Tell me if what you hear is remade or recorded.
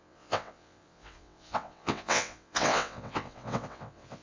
remade